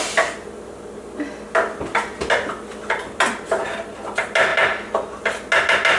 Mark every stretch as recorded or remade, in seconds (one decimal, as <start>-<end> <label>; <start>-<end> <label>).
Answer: 0.0-6.0 recorded